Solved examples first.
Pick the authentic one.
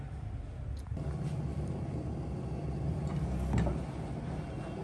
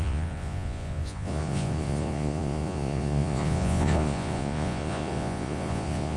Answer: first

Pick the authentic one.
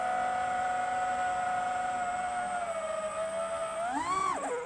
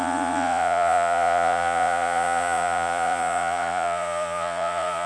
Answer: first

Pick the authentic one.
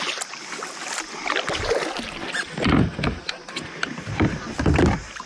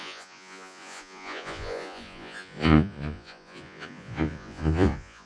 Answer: first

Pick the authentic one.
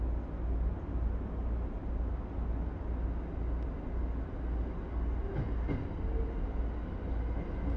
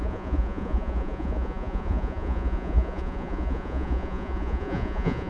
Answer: first